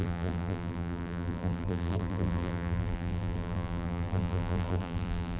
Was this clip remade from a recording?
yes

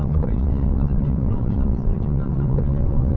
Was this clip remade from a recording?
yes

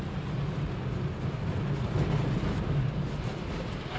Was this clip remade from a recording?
no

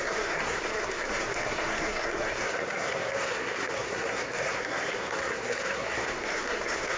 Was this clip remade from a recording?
yes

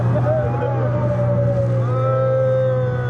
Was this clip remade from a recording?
no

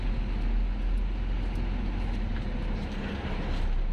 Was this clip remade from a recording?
no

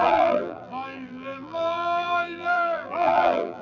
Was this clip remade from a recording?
yes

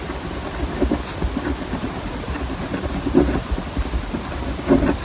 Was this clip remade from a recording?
no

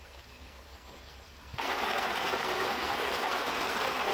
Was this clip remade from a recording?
yes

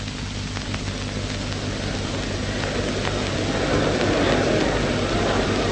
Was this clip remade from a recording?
no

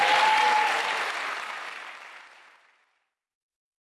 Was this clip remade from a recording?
no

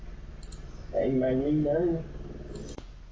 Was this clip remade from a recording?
no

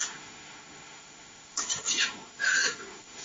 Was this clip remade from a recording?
yes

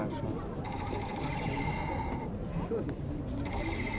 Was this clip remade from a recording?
yes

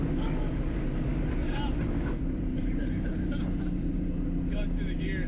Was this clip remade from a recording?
no